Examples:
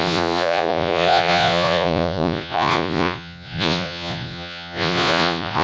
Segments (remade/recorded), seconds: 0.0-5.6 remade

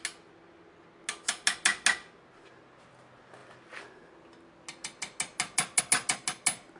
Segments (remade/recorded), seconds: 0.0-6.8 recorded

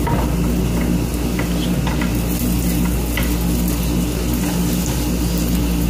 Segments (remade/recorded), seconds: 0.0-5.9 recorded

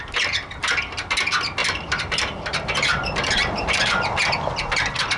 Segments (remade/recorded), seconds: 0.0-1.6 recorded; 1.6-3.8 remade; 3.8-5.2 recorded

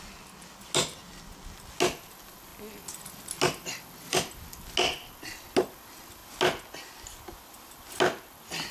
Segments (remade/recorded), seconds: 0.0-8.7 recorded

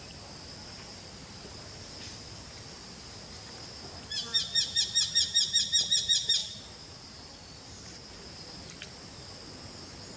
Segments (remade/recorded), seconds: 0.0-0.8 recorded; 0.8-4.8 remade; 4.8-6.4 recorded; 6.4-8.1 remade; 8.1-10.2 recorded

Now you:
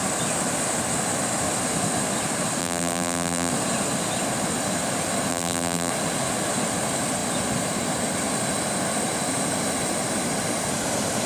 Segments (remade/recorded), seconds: 0.0-2.6 recorded; 2.6-3.5 remade; 3.5-5.3 recorded; 5.3-5.9 remade; 5.9-11.3 recorded

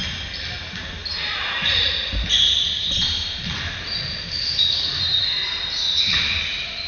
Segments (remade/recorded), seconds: 0.0-6.9 recorded